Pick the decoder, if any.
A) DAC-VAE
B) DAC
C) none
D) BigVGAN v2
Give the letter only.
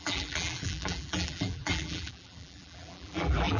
D